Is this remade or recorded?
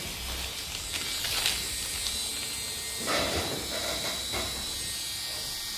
recorded